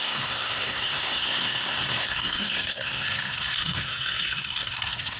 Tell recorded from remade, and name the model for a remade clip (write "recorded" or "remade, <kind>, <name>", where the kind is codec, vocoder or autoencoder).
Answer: remade, codec, SNAC